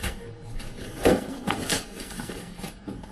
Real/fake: fake